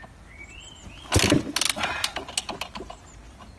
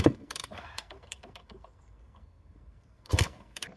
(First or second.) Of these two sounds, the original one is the first